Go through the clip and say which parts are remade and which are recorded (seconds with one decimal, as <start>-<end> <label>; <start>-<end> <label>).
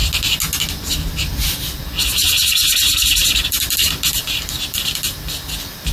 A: 0.0-3.5 recorded; 3.5-5.9 remade